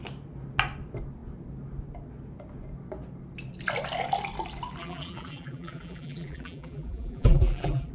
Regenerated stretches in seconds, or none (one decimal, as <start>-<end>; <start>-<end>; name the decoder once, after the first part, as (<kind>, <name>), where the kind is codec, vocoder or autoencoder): 4.8-7.9 (vocoder, BigVGAN v2)